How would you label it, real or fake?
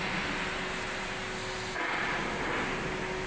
real